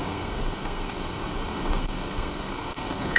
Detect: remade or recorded remade